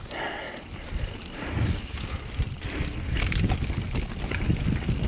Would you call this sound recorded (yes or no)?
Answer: yes